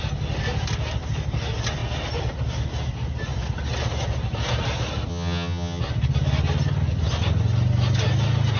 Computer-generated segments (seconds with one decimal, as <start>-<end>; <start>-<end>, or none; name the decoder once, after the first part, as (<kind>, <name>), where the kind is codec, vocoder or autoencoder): 5.1-5.8 (vocoder, HiFi-GAN)